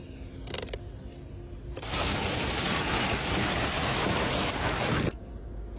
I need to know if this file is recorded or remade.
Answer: recorded